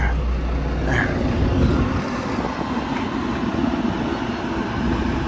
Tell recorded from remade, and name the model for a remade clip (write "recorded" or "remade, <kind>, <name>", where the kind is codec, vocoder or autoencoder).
recorded